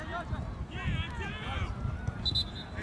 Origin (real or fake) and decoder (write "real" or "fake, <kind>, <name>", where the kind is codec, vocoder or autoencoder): real